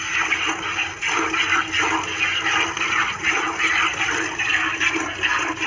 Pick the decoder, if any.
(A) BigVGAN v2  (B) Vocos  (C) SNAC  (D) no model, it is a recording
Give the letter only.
D